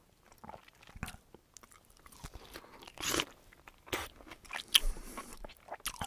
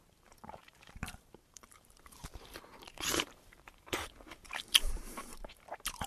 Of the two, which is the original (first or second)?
first